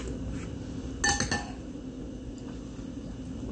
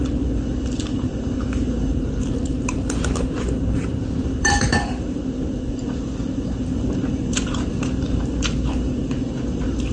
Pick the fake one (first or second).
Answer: second